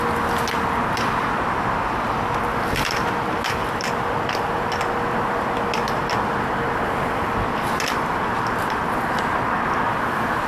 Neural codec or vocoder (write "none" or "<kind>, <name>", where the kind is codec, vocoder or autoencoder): none